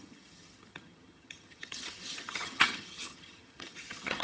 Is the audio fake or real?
fake